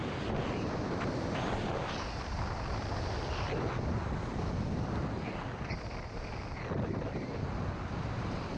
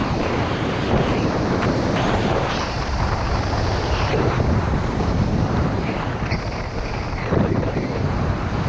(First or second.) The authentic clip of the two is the first